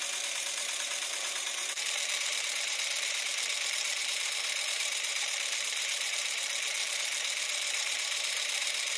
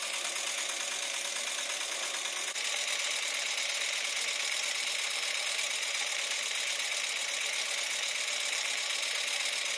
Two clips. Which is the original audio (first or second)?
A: second